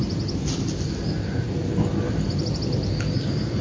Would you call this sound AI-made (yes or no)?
no